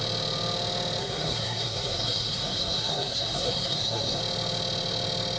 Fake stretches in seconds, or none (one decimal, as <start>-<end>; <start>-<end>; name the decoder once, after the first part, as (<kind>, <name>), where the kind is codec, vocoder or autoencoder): 1.0-4.2 (codec, SNAC)